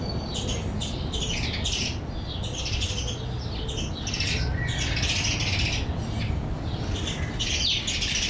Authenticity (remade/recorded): recorded